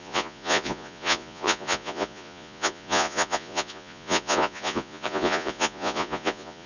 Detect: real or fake fake